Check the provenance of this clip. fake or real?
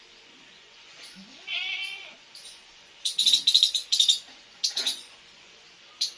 fake